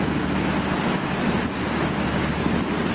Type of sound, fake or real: real